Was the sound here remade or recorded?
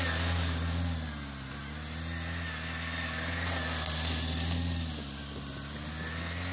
recorded